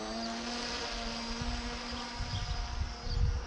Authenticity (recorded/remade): recorded